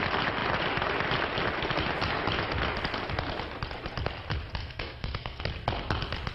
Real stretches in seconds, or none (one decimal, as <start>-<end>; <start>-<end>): 0.0-4.6; 5.4-6.3